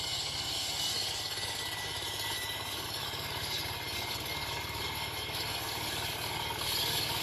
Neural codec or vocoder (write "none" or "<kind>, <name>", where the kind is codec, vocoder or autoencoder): codec, DAC